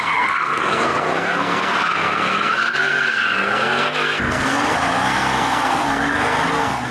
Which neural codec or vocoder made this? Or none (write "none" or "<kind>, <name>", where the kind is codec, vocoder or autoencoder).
codec, SNAC